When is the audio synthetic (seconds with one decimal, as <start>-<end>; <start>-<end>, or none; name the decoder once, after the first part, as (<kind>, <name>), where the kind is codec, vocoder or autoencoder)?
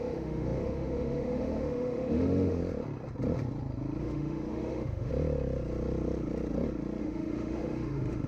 0.0-2.6 (autoencoder, DAC-VAE); 4.0-5.1; 7.0-8.3